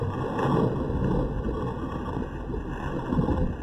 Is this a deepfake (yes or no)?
no